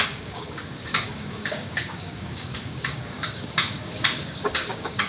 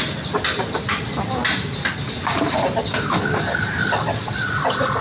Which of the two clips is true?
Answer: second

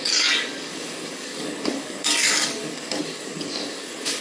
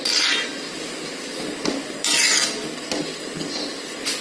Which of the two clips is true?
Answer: second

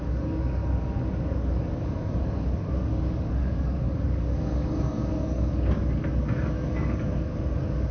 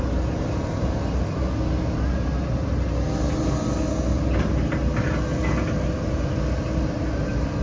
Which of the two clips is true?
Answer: second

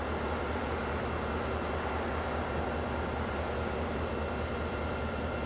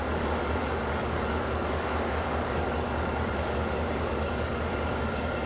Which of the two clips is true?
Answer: first